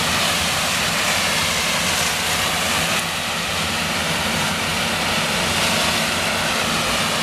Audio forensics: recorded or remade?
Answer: recorded